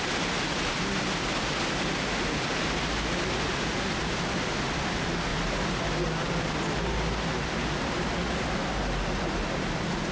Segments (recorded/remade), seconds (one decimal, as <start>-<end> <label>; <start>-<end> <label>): 0.0-10.1 recorded